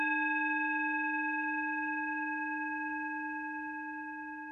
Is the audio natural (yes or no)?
yes